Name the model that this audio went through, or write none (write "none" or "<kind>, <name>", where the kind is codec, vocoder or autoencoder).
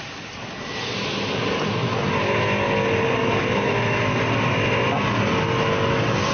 none